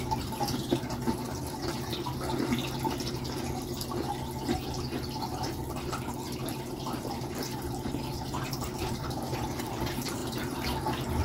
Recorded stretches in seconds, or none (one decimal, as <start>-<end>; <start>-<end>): 1.9-6.5